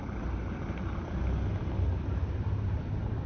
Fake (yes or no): no